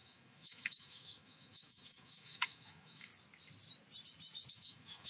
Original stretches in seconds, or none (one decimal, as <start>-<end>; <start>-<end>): 3.1-4.5